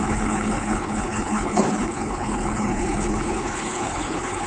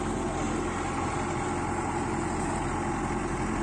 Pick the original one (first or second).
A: second